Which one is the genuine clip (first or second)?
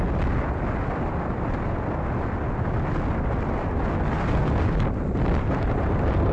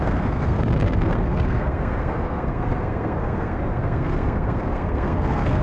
first